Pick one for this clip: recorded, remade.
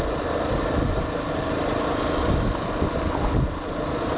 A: recorded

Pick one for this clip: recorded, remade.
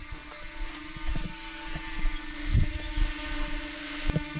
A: recorded